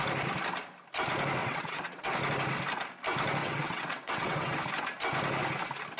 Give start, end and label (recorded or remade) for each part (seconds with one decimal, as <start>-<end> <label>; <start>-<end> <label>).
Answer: 0.0-1.4 recorded; 1.4-2.1 remade; 2.1-3.4 recorded; 3.4-4.5 remade; 4.5-6.0 recorded